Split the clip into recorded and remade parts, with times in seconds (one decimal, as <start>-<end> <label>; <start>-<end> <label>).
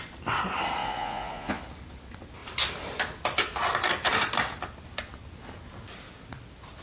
0.0-0.8 recorded; 0.8-1.6 remade; 1.6-6.8 recorded